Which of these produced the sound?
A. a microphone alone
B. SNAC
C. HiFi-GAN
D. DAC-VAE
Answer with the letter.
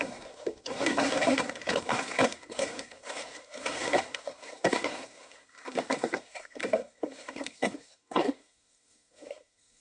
B